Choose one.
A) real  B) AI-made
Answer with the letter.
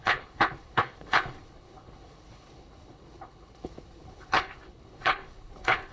B